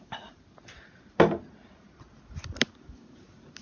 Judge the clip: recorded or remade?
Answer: recorded